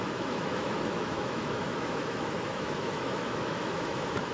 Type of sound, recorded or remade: remade